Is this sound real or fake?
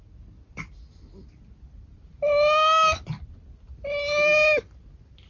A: real